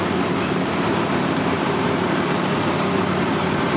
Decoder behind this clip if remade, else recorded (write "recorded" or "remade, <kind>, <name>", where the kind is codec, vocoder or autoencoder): remade, vocoder, BigVGAN v2